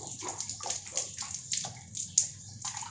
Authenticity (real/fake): real